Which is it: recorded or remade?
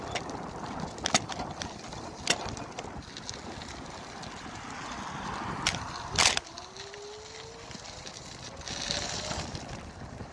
recorded